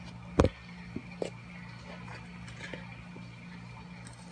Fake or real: real